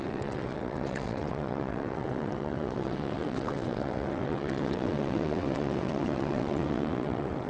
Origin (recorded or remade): remade